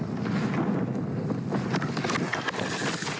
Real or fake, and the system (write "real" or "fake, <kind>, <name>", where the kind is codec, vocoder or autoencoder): real